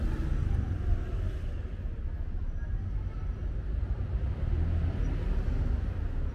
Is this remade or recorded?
recorded